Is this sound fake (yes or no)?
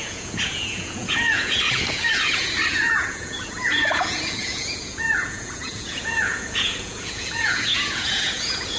yes